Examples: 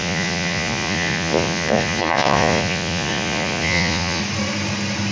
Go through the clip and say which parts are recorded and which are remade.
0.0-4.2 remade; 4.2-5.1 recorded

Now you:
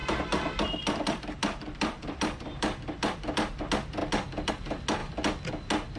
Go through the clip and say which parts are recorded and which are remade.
0.0-3.6 remade; 3.6-4.0 recorded; 4.0-4.5 remade; 4.5-6.0 recorded

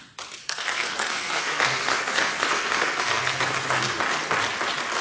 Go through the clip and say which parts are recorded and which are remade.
0.0-0.4 recorded; 0.4-3.4 remade; 3.4-5.0 recorded

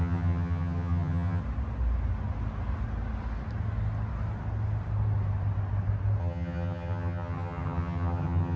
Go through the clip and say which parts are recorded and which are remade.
0.0-1.4 remade; 1.4-6.2 recorded; 6.2-8.6 remade

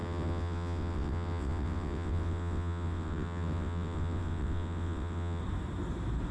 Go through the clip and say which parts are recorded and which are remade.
0.0-5.4 remade; 5.4-6.3 recorded

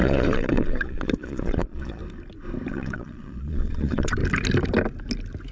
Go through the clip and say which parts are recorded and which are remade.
0.0-2.0 remade; 2.0-2.7 recorded; 2.7-4.2 remade; 4.2-5.5 recorded

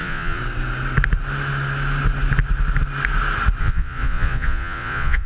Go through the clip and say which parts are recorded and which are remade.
0.0-0.4 remade; 0.4-3.6 recorded; 3.6-5.3 remade